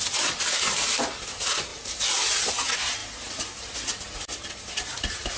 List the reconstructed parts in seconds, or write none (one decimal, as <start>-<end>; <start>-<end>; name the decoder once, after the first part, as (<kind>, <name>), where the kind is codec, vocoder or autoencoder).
1.7-2.5 (vocoder, BigVGAN v2); 3.0-3.7; 4.3-4.9